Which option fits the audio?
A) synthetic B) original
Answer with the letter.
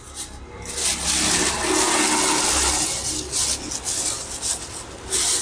B